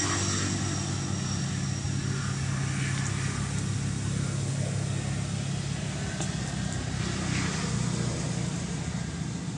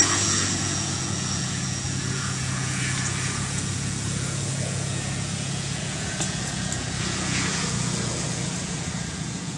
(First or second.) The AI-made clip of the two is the second